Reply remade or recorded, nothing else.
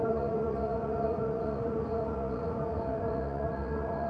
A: remade